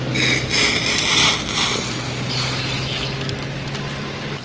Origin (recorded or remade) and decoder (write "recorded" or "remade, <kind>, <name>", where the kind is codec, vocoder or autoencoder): recorded